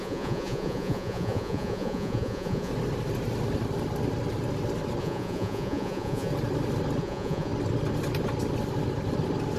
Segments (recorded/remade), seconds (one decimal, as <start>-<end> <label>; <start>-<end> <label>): 0.0-2.7 remade; 2.7-5.0 recorded; 5.0-6.3 remade; 6.3-7.0 recorded; 7.0-7.5 remade; 7.5-9.6 recorded